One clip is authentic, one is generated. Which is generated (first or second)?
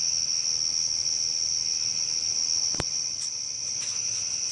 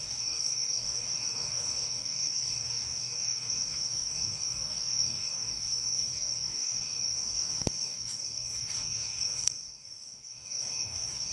second